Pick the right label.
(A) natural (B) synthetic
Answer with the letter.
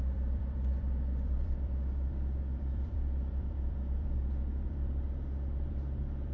B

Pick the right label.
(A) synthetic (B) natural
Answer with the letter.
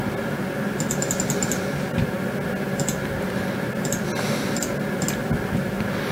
B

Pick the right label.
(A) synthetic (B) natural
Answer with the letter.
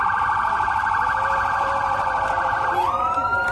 A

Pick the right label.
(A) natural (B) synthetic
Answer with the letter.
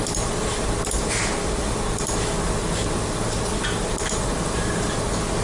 A